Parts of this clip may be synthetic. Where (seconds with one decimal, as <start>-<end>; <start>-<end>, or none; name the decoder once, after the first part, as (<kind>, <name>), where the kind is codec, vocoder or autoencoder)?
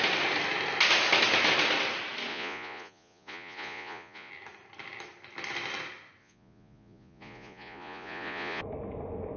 2.3-4.3 (vocoder, Vocos); 6.2-8.6